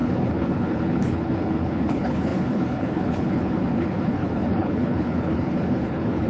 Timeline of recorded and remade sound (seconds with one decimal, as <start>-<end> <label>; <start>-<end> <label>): 0.0-6.3 remade

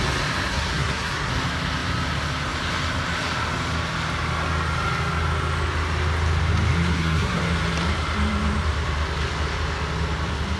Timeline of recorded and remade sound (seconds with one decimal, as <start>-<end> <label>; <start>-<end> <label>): 0.0-0.5 recorded; 0.5-1.3 remade; 1.3-6.9 recorded; 6.9-7.4 remade; 7.4-10.6 recorded

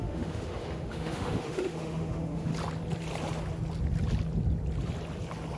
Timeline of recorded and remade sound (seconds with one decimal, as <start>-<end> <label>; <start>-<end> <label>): 0.0-2.5 remade; 2.5-5.6 recorded